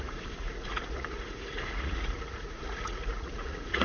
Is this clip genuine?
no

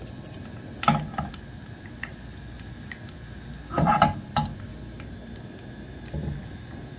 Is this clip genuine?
yes